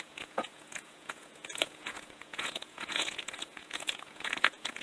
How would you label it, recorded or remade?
remade